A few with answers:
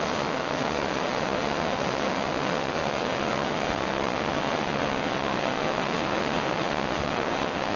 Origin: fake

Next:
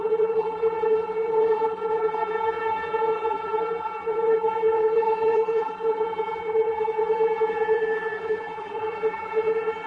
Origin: fake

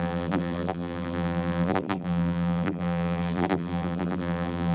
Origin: fake